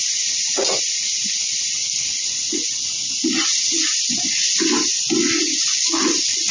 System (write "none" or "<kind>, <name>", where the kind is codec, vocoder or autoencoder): none